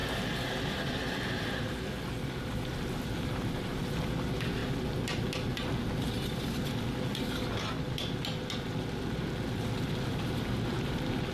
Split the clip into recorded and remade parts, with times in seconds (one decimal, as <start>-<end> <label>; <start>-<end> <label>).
0.0-11.3 recorded